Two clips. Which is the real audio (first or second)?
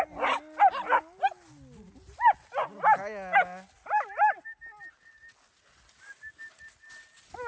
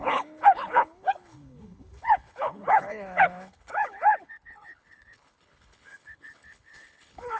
first